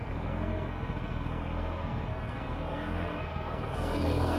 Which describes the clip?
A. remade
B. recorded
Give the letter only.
A